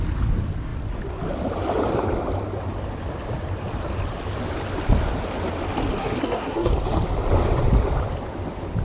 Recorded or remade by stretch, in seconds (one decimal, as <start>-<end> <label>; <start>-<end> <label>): 0.0-6.0 recorded; 6.0-6.7 remade; 6.7-8.8 recorded